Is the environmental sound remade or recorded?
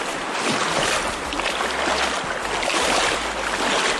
recorded